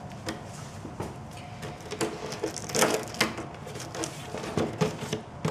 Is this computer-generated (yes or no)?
no